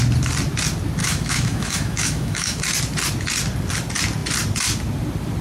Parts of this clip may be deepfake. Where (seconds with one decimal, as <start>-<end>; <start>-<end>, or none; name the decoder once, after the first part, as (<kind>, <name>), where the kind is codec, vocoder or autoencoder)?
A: 1.0-2.6 (autoencoder, DAC-VAE)